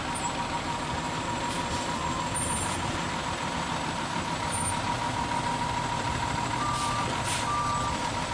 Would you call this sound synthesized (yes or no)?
yes